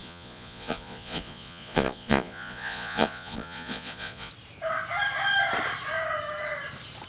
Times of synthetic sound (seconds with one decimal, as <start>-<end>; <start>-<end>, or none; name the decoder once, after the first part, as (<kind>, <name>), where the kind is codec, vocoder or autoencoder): 0.0-4.3 (vocoder, Vocos)